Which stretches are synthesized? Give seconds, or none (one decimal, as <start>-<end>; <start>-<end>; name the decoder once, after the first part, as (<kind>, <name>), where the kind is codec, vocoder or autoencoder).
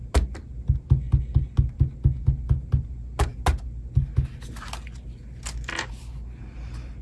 none